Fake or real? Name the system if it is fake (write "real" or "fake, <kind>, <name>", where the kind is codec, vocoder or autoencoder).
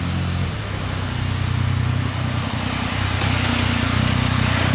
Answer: real